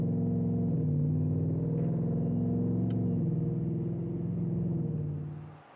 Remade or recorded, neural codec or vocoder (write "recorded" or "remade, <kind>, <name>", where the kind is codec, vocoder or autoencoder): recorded